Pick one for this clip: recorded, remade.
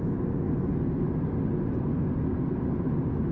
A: recorded